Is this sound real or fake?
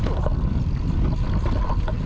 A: real